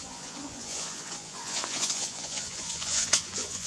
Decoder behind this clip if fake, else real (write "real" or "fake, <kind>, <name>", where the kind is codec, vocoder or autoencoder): fake, vocoder, Vocos